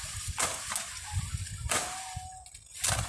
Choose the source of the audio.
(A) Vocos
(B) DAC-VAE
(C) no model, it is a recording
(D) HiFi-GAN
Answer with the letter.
C